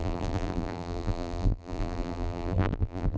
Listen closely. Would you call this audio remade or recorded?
remade